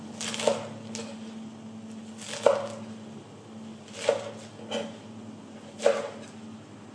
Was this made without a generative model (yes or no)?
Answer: yes